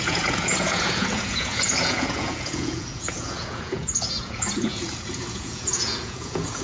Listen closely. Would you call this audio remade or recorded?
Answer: remade